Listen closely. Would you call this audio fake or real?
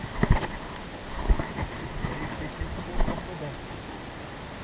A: real